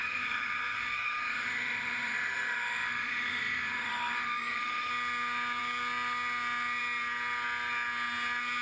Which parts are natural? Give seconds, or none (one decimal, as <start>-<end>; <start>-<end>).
4.9-8.6